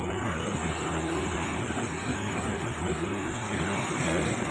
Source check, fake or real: fake